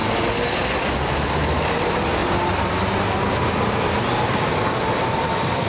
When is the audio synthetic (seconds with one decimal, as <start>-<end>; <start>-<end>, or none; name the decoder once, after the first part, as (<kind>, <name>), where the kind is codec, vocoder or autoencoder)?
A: none